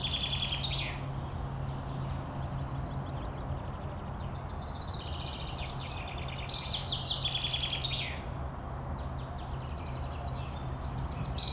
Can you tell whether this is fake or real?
real